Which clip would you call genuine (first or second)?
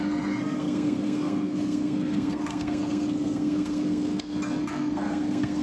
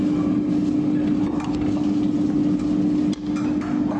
second